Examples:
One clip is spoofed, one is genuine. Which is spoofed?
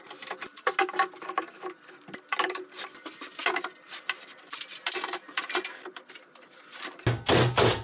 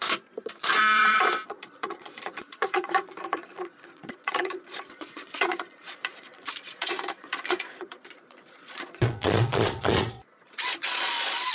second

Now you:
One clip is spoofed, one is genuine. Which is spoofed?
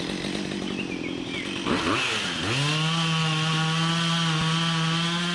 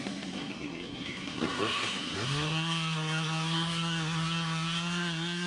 second